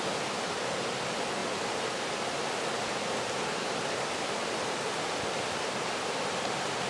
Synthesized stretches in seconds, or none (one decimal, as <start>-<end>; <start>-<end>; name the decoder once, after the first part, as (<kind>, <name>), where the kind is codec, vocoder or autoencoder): none